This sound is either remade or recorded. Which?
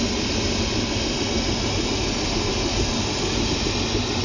recorded